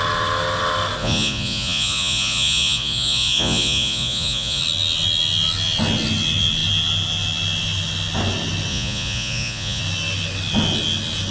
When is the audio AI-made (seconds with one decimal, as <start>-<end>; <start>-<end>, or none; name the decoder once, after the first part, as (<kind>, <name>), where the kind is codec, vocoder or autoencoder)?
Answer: 1.0-4.6 (vocoder, Vocos); 8.7-9.8